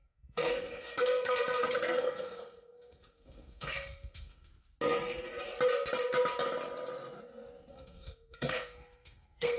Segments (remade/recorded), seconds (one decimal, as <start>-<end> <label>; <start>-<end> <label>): 0.0-4.5 remade; 4.5-7.7 recorded; 7.7-9.6 remade